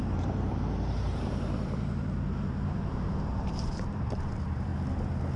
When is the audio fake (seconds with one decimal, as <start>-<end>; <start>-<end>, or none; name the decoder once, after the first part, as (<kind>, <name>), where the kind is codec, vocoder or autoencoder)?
0.0-4.7 (vocoder, BigVGAN v2)